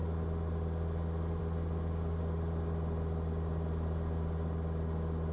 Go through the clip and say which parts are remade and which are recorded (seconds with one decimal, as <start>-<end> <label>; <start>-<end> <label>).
0.0-5.3 recorded